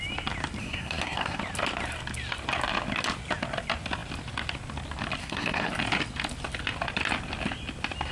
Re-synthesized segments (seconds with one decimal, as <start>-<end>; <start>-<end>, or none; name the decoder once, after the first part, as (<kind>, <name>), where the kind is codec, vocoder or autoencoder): 0.6-1.4 (codec, SNAC); 5.2-5.7